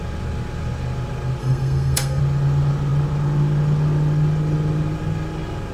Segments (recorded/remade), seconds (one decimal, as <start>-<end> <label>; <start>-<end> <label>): 0.0-1.4 recorded; 1.4-2.2 remade; 2.2-5.7 recorded